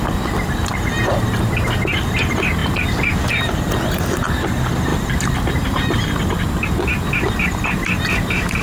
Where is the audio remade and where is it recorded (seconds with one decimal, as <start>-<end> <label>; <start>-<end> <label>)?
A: 0.0-2.6 recorded; 2.6-3.5 remade; 3.5-4.9 recorded; 4.9-6.2 remade; 6.2-8.6 recorded